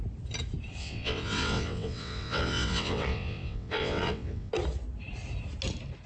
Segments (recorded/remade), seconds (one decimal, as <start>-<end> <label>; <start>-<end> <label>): 0.0-0.8 recorded; 0.8-4.5 remade; 4.5-6.1 recorded